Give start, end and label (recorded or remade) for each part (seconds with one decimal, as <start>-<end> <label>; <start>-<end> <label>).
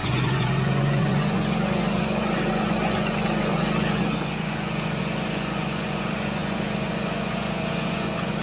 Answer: 0.0-8.4 remade